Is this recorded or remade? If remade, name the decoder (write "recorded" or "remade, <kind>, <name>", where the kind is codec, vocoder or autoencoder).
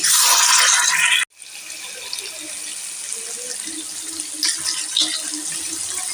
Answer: recorded